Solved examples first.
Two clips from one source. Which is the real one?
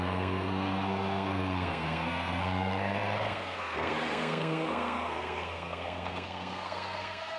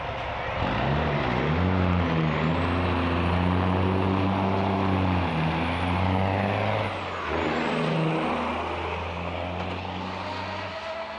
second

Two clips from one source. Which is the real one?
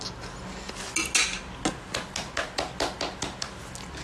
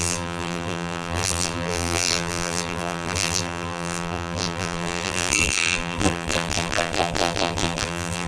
first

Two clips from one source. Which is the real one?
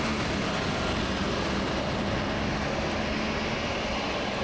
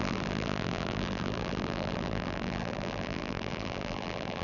first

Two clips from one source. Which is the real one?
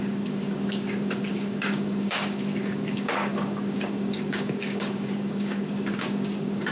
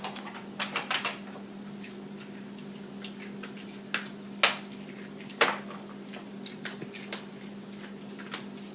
second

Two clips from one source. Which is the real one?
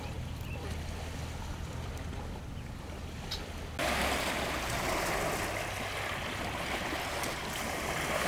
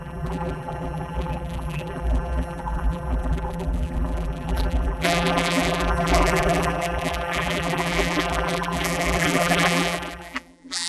first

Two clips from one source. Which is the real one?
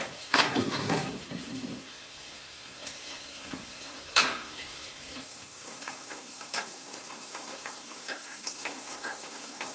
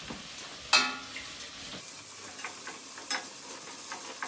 second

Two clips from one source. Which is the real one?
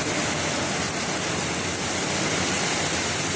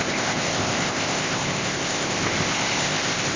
first